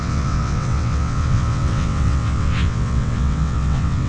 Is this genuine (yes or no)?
no